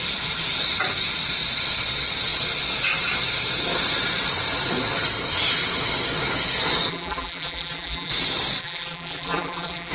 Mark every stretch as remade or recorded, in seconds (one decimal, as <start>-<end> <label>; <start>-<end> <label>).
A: 0.0-6.9 recorded; 6.9-8.1 remade; 8.1-8.6 recorded; 8.6-9.9 remade